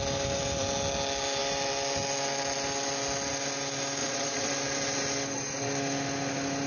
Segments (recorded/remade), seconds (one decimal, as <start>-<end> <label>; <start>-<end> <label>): 0.0-4.0 recorded; 4.0-4.5 remade; 4.5-6.7 recorded